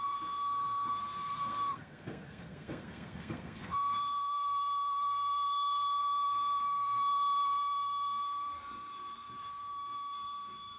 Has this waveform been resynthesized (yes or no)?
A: yes